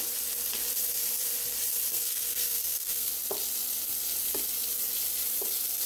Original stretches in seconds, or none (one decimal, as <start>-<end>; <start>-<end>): 0.0-1.9; 3.1-5.9